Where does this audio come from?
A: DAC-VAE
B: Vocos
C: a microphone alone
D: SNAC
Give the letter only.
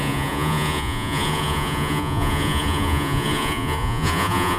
B